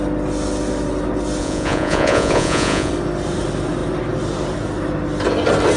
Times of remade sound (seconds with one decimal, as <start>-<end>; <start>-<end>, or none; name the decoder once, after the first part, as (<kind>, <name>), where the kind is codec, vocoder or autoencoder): 1.4-2.9 (vocoder, Vocos)